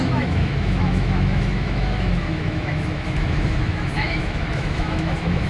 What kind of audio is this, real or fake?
fake